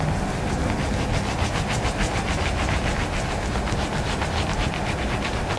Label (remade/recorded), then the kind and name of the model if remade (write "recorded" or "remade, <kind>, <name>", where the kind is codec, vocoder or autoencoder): recorded